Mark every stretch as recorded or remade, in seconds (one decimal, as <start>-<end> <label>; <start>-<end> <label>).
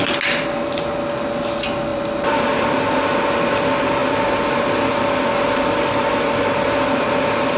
0.0-1.9 recorded; 1.9-2.5 remade; 2.5-7.6 recorded